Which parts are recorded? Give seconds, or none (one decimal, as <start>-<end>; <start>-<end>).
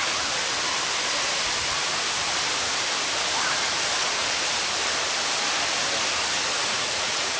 0.0-6.5